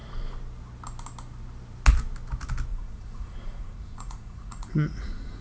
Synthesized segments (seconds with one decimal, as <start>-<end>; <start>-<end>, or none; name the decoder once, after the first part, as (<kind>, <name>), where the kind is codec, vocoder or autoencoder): 2.7-5.4 (vocoder, Vocos)